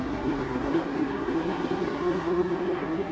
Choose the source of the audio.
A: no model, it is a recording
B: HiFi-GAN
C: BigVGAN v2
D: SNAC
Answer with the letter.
D